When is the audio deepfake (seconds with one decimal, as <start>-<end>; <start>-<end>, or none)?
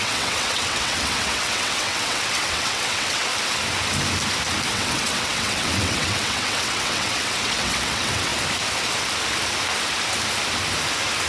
0.0-3.3; 4.7-8.3